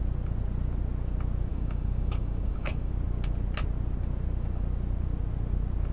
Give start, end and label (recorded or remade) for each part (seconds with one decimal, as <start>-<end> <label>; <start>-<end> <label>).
0.0-1.5 recorded; 1.5-2.9 remade; 2.9-5.9 recorded

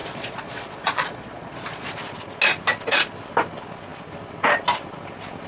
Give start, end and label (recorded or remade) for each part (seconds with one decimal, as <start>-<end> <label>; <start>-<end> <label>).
0.0-1.9 remade; 1.9-5.5 recorded

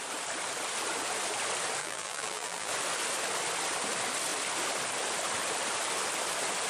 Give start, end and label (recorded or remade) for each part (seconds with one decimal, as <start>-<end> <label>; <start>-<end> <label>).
0.0-1.8 recorded; 1.8-2.7 remade; 2.7-6.7 recorded

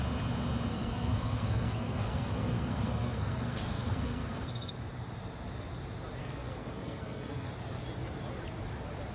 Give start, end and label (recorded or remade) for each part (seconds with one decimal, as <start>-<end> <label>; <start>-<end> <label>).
0.0-0.7 recorded; 0.7-4.7 remade; 4.7-6.2 recorded; 6.2-7.5 remade; 7.5-9.1 recorded